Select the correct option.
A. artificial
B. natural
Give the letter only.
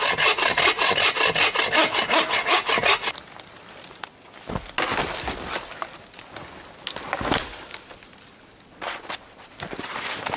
B